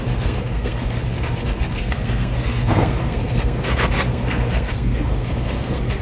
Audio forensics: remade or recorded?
remade